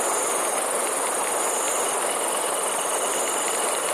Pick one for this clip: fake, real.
real